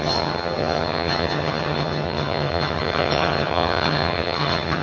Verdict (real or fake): fake